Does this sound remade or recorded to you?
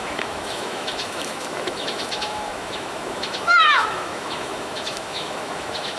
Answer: remade